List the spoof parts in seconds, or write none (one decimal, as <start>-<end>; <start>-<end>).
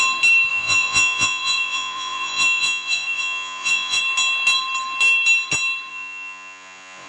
0.5-4.0; 5.9-7.1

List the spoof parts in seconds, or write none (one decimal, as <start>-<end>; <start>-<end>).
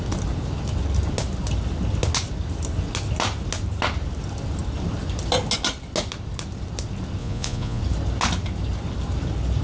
7.2-7.8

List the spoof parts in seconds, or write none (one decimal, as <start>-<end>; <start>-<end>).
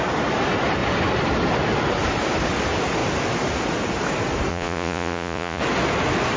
4.5-5.6